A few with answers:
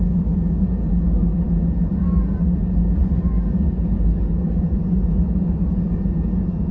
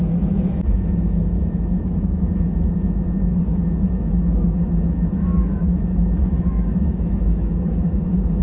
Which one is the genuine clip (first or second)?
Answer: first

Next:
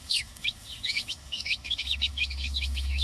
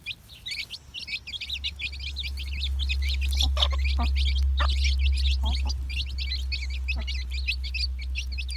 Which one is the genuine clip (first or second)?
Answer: second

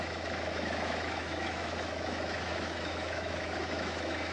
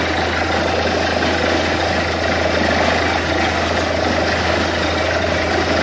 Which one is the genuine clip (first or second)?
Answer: second